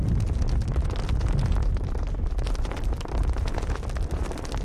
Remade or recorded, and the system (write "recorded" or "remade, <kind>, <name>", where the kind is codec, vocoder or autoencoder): recorded